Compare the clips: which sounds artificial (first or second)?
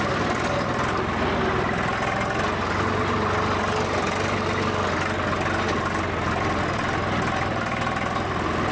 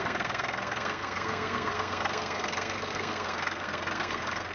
second